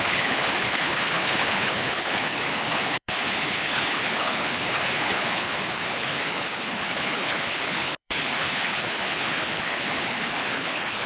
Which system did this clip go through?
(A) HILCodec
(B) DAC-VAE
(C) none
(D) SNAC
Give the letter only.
A